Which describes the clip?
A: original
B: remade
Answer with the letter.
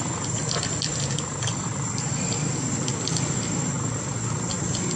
A